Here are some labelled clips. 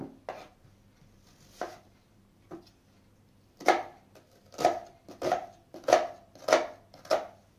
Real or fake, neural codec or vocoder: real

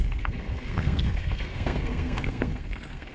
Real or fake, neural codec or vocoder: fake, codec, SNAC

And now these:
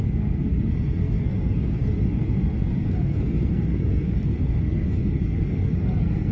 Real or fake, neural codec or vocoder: fake, codec, SNAC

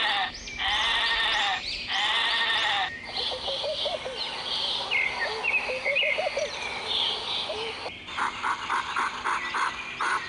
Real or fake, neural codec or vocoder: real